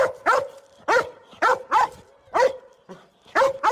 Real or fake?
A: real